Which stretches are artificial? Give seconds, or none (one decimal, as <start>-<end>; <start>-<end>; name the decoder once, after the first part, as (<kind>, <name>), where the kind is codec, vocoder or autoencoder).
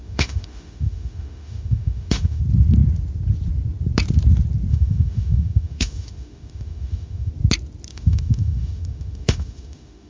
0.0-2.4 (autoencoder, DAC-VAE); 4.7-7.3; 7.9-10.1